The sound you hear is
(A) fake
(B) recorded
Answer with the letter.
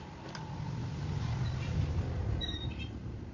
A